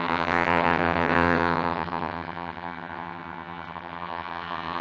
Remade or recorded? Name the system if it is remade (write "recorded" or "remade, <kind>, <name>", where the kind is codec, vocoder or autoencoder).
remade, vocoder, HiFi-GAN